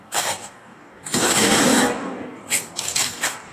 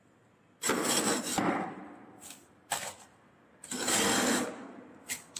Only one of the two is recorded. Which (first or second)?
second